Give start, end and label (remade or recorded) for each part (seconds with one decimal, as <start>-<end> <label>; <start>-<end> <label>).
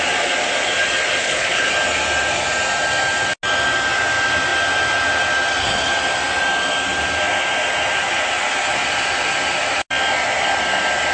0.0-1.2 recorded; 1.2-1.7 remade; 1.7-11.1 recorded